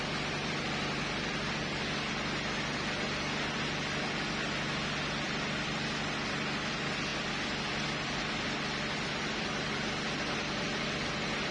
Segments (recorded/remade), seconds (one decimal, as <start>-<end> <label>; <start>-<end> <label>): 0.0-11.5 recorded

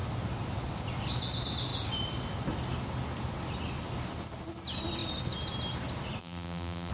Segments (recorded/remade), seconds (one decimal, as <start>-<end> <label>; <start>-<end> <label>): 0.0-6.2 recorded; 6.2-6.9 remade

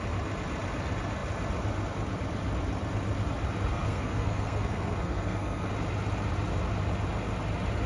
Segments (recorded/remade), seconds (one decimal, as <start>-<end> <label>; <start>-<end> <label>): 0.0-3.7 recorded; 3.7-5.7 remade; 5.7-7.9 recorded

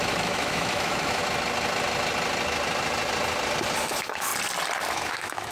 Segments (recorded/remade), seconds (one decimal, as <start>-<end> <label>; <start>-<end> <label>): 0.0-1.2 remade; 1.2-3.8 recorded; 3.8-4.3 remade; 4.3-4.9 recorded; 4.9-5.5 remade

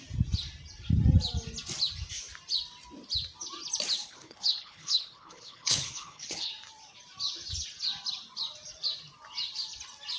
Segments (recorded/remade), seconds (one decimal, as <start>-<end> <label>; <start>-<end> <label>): 0.0-4.0 recorded; 4.0-6.5 remade; 6.5-10.2 recorded